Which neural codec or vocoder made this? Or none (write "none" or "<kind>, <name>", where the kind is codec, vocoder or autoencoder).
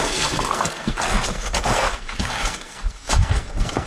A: codec, SNAC